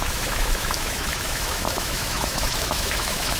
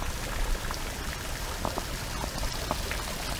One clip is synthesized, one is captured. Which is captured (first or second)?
second